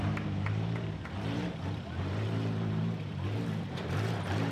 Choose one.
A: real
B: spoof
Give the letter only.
B